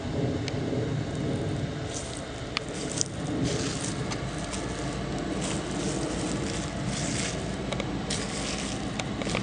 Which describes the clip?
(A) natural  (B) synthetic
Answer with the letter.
A